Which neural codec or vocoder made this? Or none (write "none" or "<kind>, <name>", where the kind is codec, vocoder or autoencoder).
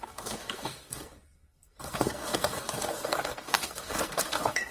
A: codec, SNAC